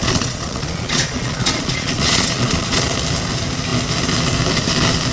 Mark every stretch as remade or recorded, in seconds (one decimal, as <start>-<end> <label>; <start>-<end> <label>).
0.0-2.8 remade; 2.8-5.1 recorded